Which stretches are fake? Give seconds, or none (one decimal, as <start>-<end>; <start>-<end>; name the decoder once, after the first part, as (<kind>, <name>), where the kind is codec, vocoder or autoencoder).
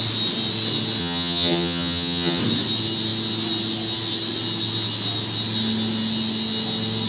1.0-2.4 (vocoder, HiFi-GAN)